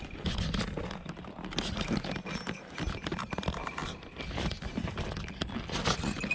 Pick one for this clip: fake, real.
real